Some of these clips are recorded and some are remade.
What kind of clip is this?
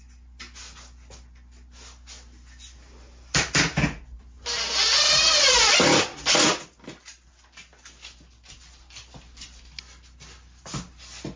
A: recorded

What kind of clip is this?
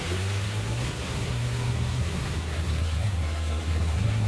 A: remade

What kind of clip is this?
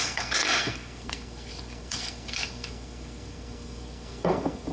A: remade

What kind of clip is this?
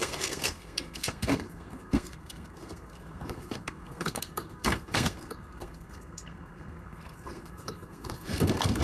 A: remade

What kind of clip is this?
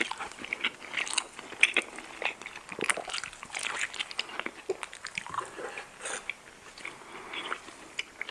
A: recorded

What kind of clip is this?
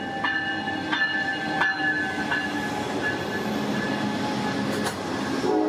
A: recorded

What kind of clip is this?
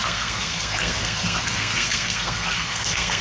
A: remade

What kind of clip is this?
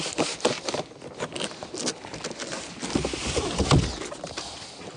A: recorded